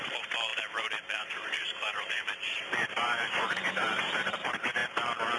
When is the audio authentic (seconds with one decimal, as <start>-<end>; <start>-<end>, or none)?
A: 4.8-5.4